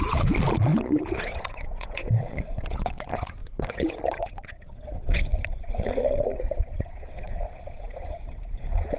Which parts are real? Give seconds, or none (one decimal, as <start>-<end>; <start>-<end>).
none